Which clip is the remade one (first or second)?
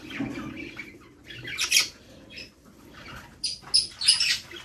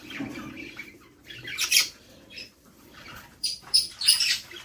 second